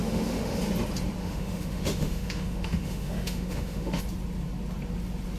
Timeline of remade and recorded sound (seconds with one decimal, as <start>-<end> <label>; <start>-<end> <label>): 0.0-0.6 remade; 0.6-1.2 recorded; 1.2-4.0 remade; 4.0-5.4 recorded

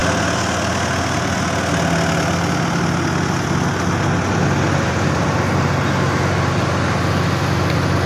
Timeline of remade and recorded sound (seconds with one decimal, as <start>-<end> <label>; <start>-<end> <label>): 0.0-8.1 recorded

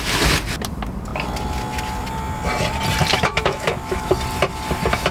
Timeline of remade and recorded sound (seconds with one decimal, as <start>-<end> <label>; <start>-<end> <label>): 0.0-3.1 recorded; 3.1-4.1 remade; 4.1-5.1 recorded

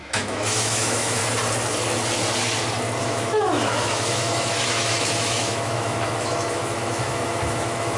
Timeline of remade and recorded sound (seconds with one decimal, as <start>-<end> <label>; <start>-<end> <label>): 0.0-1.2 remade; 1.2-3.0 recorded; 3.0-8.0 remade

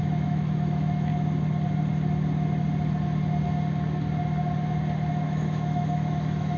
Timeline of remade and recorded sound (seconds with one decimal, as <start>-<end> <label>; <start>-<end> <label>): 0.0-1.1 remade; 1.1-5.1 recorded; 5.1-6.6 remade

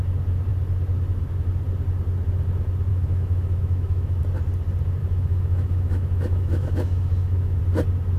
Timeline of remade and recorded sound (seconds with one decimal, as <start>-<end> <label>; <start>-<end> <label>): 0.0-2.9 recorded; 2.9-4.2 remade; 4.2-5.0 recorded; 5.0-7.6 remade; 7.6-8.2 recorded